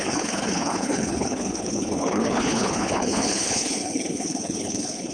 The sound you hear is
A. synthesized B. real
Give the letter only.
A